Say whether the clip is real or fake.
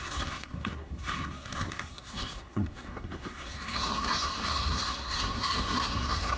fake